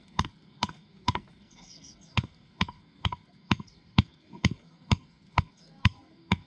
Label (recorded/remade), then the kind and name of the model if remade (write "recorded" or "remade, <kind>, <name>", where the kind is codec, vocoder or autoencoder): remade, codec, SNAC